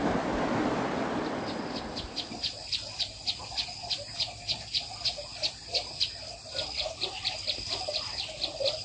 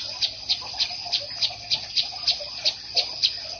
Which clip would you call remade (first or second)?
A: second